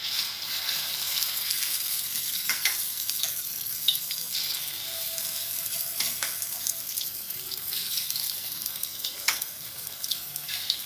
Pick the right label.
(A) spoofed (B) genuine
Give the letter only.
A